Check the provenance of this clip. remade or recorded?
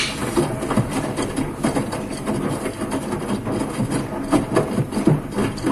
recorded